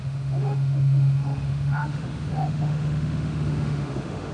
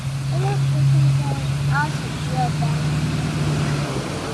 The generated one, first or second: first